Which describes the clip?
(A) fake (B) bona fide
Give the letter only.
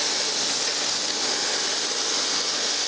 B